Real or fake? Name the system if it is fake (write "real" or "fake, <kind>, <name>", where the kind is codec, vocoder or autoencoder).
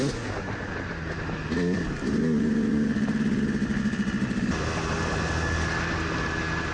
real